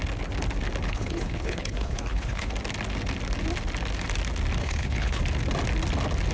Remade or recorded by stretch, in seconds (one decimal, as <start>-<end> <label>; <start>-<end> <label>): 0.0-0.9 recorded; 0.9-2.5 remade; 2.5-4.6 recorded; 4.6-5.2 remade; 5.2-6.3 recorded